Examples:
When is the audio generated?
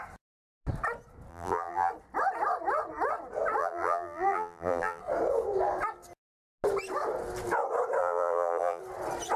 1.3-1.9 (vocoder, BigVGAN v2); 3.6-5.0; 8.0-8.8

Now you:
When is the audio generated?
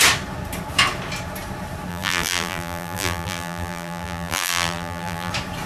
1.9-5.3 (vocoder, BigVGAN v2)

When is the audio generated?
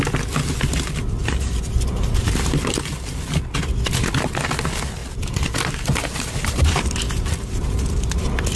1.2-3.2 (vocoder, BigVGAN v2); 5.0-8.2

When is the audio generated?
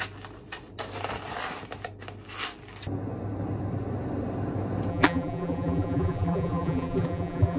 4.9-7.6 (vocoder, BigVGAN v2)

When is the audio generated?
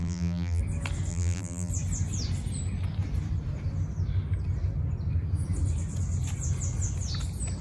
0.0-0.6 (vocoder, BigVGAN v2); 1.1-1.7